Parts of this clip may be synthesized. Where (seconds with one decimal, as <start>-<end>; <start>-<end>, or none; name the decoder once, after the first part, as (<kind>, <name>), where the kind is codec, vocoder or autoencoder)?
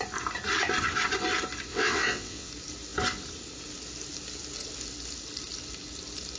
1.7-2.5 (vocoder, WaveNeXt)